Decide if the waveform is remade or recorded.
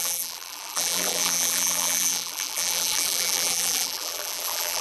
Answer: remade